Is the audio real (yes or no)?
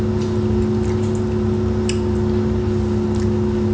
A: yes